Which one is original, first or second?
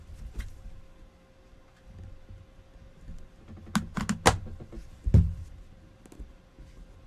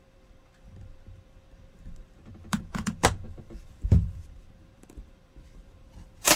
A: first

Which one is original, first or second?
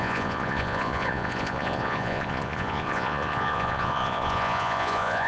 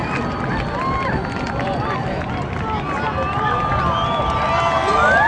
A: second